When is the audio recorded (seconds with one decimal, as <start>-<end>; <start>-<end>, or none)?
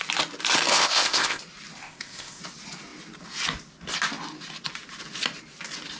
0.0-0.7; 1.4-1.8; 2.4-6.0